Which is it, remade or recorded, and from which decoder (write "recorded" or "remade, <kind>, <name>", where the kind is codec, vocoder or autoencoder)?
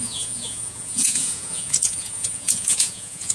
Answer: remade, vocoder, Vocos